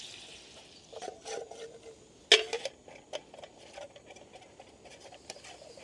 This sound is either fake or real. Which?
real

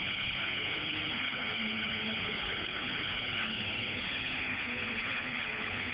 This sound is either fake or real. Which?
fake